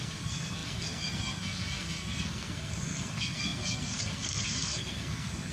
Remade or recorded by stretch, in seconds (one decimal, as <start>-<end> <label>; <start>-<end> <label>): 0.0-5.5 remade